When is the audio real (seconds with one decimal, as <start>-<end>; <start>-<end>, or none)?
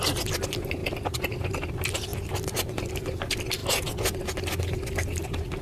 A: 0.0-5.6